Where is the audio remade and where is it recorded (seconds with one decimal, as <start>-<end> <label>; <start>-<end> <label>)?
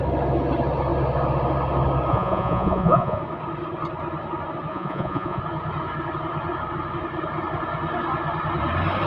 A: 0.0-2.1 recorded; 2.1-3.2 remade; 3.2-4.7 recorded; 4.7-5.4 remade; 5.4-9.1 recorded